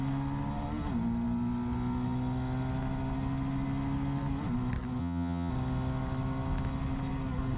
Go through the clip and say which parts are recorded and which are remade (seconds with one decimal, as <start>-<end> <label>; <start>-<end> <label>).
0.0-5.0 recorded; 5.0-5.5 remade; 5.5-7.6 recorded